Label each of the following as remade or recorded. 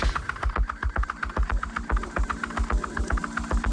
recorded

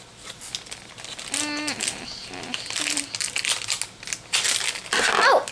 recorded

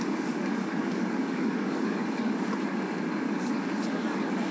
remade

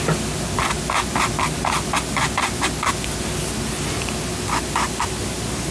recorded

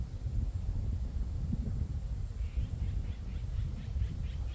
recorded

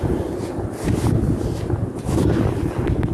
recorded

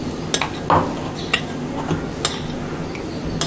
recorded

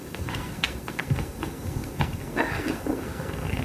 remade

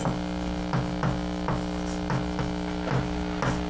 recorded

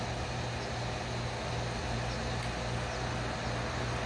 recorded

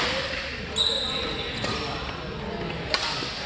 recorded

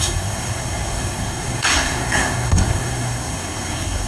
remade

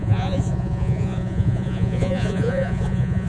remade